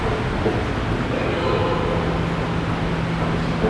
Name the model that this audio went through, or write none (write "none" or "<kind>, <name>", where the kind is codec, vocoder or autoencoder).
none